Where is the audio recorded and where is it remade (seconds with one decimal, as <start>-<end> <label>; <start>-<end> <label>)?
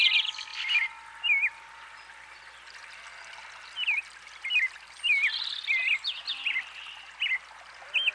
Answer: 0.0-8.1 recorded